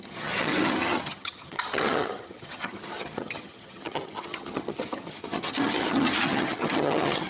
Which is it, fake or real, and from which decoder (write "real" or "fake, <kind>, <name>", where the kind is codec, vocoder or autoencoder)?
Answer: fake, vocoder, HiFi-GAN